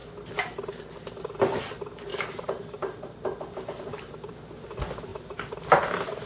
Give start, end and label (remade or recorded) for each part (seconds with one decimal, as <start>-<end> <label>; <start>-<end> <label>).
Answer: 0.0-2.1 recorded; 2.1-4.3 remade; 4.3-6.3 recorded